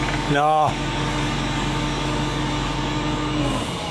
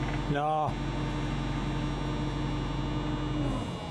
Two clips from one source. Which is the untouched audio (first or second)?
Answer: second